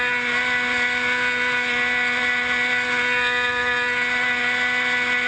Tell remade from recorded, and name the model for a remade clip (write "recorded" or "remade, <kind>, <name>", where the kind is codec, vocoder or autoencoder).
recorded